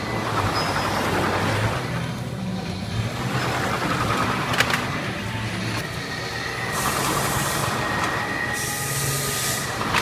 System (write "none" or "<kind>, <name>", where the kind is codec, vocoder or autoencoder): none